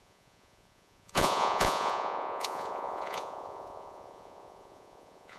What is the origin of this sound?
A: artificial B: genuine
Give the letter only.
A